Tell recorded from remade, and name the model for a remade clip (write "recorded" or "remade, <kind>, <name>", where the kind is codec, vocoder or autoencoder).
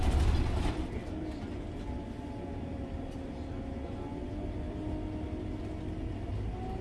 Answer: recorded